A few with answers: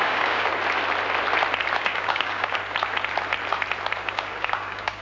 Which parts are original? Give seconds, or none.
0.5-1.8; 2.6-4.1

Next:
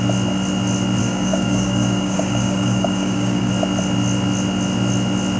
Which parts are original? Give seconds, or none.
0.0-1.0; 3.5-5.4

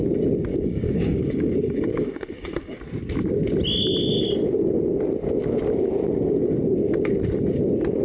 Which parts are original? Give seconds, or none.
0.0-0.5; 2.8-8.0

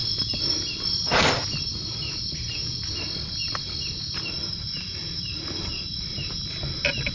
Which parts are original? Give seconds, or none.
0.0-7.1

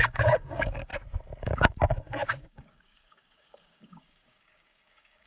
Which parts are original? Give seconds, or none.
0.9-1.4

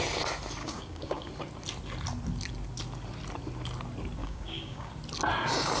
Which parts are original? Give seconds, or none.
0.0-0.6; 1.3-4.2; 4.9-5.8